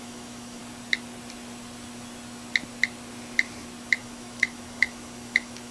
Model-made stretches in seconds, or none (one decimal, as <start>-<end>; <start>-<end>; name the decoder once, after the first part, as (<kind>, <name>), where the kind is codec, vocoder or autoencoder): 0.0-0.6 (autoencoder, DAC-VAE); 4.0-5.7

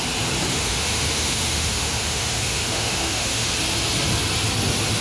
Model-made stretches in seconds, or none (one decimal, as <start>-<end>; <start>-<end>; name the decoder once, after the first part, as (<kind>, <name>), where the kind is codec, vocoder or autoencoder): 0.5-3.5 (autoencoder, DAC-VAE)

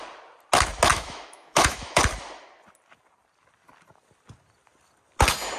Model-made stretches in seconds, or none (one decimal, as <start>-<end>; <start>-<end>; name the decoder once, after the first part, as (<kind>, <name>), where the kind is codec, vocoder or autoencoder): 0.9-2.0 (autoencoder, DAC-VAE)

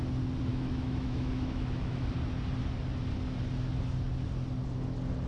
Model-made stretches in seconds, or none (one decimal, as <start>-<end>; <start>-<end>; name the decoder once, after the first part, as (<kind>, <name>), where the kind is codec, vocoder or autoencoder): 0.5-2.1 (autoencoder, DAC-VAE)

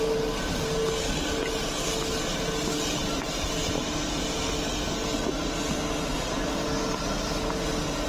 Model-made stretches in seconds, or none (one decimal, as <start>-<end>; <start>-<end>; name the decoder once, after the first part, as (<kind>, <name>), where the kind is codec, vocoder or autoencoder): none